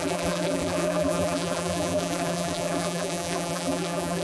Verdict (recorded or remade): remade